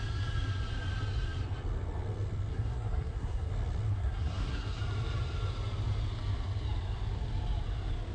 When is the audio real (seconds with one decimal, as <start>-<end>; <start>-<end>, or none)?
0.0-2.5; 3.5-3.9; 4.8-8.1